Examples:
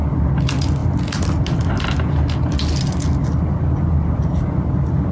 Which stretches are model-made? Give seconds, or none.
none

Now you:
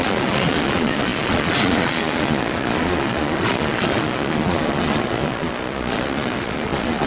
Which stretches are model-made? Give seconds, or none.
0.0-7.1 (vocoder, Vocos)

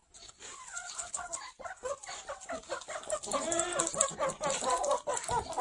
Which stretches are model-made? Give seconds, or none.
none